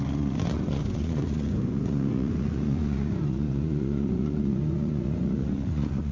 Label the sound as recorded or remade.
remade